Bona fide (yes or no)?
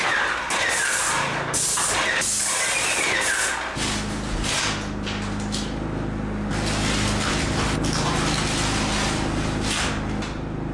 yes